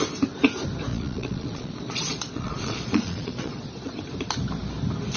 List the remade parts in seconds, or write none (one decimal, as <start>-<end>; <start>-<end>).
0.9-4.0